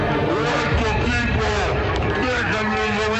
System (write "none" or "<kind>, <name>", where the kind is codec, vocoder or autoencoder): vocoder, BigVGAN v2